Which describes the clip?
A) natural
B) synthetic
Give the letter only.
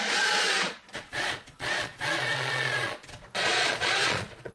B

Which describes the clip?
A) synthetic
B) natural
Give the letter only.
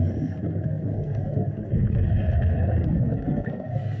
A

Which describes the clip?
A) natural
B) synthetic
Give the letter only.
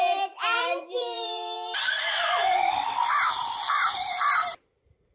B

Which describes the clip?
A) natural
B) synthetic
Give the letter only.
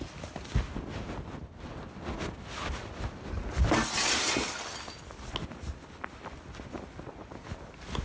A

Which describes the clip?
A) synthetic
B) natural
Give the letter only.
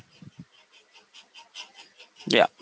B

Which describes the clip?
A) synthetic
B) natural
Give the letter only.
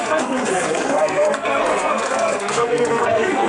A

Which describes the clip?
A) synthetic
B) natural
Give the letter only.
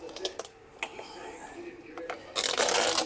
B